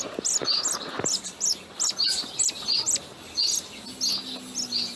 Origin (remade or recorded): recorded